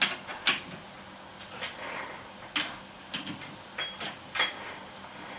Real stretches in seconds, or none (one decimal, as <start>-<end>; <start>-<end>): 0.0-5.4